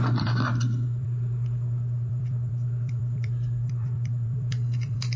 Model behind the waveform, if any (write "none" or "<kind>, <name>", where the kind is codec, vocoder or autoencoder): vocoder, BigVGAN v2